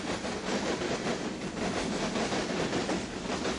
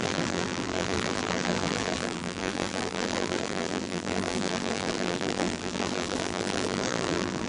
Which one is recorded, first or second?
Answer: first